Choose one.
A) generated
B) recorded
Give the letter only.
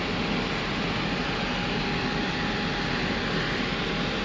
B